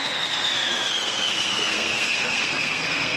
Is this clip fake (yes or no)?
yes